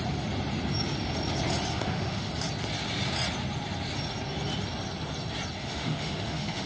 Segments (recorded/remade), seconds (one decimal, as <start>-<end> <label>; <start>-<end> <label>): 0.0-1.7 recorded; 1.7-2.3 remade; 2.3-5.6 recorded; 5.6-6.7 remade